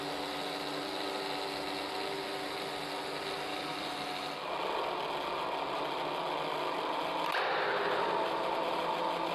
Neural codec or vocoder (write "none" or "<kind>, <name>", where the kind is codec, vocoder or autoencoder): none